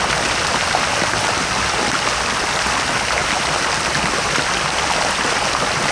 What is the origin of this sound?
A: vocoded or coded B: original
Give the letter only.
B